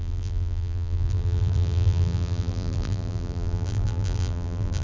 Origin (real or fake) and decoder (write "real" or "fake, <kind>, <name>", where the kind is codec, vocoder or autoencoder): fake, vocoder, BigVGAN v2